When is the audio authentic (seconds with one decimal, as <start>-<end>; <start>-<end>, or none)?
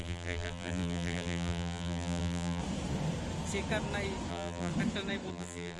2.6-4.3; 4.7-5.3